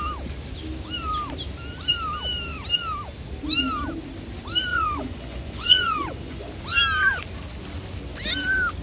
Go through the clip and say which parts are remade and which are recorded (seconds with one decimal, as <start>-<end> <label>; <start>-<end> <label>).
0.0-4.7 recorded; 4.7-6.4 remade; 6.4-8.8 recorded